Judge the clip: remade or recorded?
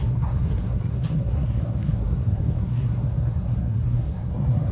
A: remade